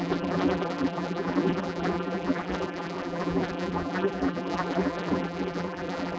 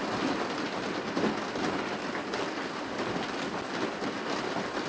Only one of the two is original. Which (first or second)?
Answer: second